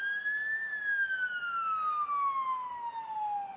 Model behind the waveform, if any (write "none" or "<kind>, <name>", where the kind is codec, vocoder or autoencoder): none